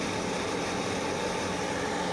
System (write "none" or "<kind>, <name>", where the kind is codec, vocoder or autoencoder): none